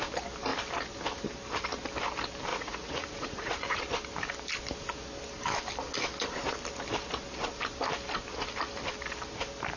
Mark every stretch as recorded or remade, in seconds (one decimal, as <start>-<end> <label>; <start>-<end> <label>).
0.0-2.5 recorded; 2.5-3.8 remade; 3.8-9.8 recorded